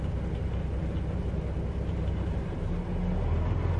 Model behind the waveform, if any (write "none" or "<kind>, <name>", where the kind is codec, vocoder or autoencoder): none